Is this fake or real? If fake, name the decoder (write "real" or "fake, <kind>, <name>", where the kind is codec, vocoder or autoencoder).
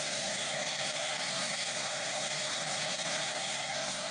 fake, codec, SNAC